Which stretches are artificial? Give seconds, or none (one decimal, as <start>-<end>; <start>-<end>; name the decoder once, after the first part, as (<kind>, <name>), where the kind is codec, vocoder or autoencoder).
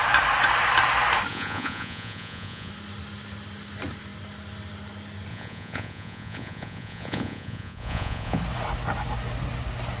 1.3-2.7 (vocoder, Vocos); 5.3-8.4